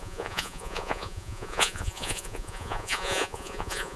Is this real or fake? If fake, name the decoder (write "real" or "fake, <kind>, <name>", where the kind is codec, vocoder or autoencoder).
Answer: fake, vocoder, Vocos